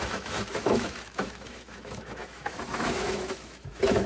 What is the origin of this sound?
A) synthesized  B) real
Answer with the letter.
A